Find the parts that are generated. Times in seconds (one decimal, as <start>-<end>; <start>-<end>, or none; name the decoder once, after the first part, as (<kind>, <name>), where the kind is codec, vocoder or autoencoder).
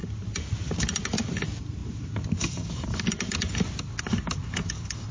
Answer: none